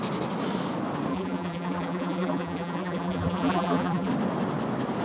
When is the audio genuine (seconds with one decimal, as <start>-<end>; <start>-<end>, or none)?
0.0-1.1; 4.1-5.0